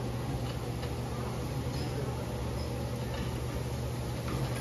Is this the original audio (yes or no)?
yes